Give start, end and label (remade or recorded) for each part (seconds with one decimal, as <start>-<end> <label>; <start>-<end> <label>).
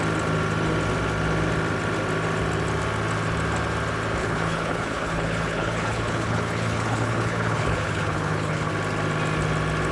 0.0-4.2 recorded; 4.2-8.7 remade; 8.7-9.9 recorded